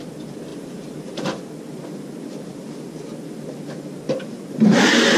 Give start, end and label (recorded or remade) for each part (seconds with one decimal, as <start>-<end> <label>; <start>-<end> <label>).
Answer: 0.0-0.5 recorded; 0.5-1.4 remade; 1.4-5.2 recorded